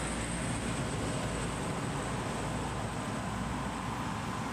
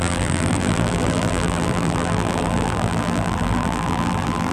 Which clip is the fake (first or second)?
second